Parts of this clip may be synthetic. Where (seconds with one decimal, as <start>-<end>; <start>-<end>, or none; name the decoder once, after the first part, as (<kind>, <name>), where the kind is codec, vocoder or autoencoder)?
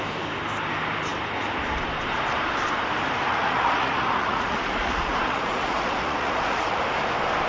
3.3-6.8 (vocoder, Vocos)